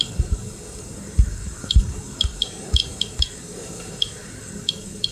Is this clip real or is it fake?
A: fake